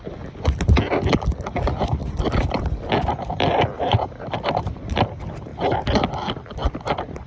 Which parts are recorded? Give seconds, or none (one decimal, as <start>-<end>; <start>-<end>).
0.0-3.7; 4.9-7.3